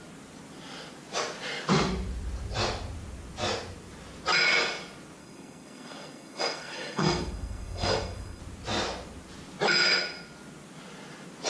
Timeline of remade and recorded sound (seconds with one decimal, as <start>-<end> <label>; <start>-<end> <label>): 0.0-5.2 recorded; 5.2-8.4 remade; 8.4-11.5 recorded